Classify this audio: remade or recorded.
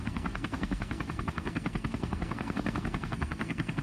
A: remade